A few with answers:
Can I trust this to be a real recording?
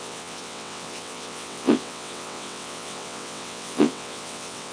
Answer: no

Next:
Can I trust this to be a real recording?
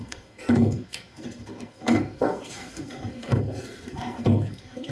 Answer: no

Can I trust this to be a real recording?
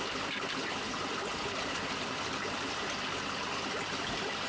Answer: yes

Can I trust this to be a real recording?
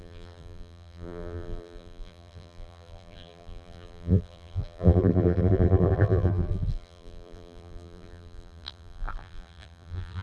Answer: no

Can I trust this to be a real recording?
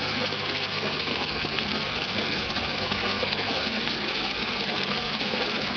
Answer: no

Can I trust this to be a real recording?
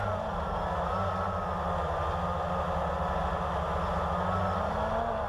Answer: yes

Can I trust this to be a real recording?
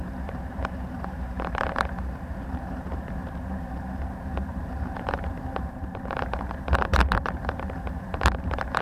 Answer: no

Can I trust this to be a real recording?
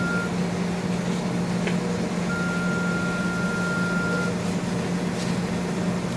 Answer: yes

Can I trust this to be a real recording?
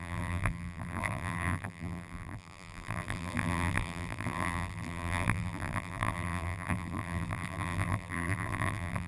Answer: no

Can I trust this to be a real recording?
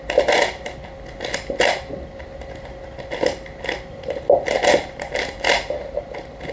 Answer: yes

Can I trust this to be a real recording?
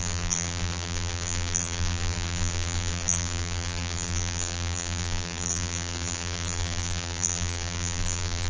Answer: no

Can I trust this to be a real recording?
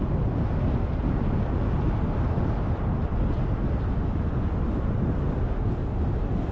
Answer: yes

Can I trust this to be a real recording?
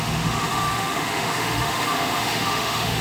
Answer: no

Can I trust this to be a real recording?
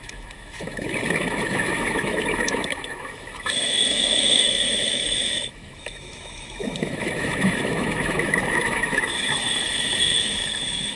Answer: no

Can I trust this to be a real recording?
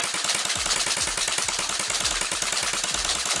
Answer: yes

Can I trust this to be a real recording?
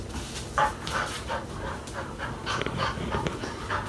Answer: yes